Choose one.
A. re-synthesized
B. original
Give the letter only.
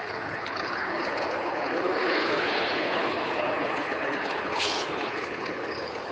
A